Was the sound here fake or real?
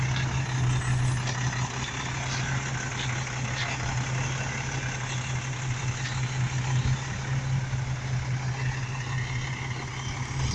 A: real